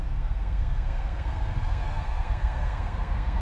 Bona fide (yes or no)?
no